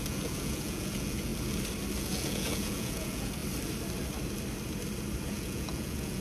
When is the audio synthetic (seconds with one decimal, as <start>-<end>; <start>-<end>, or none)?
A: 0.0-1.3; 2.0-3.4; 5.3-6.2